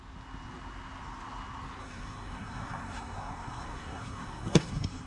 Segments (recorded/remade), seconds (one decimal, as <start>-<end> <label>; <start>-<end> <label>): 0.0-1.8 recorded; 1.8-5.1 remade